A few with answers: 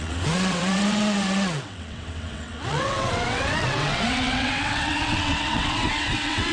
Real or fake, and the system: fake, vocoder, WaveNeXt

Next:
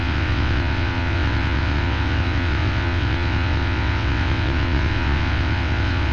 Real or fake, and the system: fake, vocoder, WaveNeXt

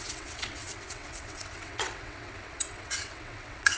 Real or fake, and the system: fake, vocoder, WaveNeXt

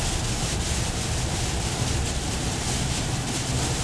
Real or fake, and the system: real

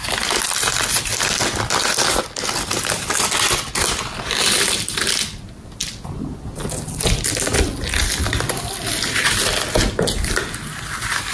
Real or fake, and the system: real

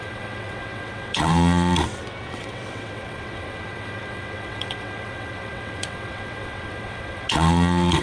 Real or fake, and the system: fake, vocoder, WaveNeXt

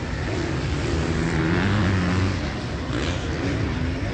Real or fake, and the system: real